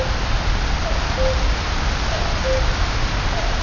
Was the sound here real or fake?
real